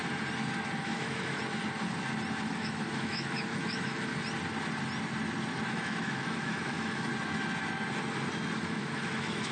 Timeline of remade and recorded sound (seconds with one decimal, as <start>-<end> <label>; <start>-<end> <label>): 0.0-0.8 recorded; 0.8-1.4 remade; 1.4-2.5 recorded; 2.5-4.1 remade; 4.1-5.7 recorded; 5.7-7.1 remade; 7.1-8.6 recorded; 8.6-9.5 remade